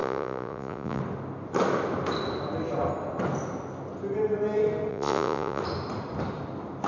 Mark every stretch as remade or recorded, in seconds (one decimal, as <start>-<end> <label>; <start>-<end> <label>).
0.0-1.0 remade; 1.0-4.9 recorded; 4.9-5.6 remade; 5.6-6.9 recorded